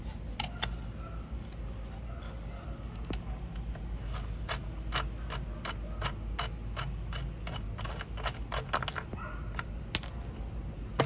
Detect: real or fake real